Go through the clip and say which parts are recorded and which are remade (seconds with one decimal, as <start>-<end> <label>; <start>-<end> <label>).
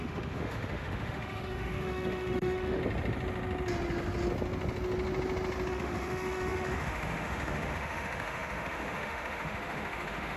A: 0.0-2.8 remade; 2.8-5.7 recorded; 5.7-10.4 remade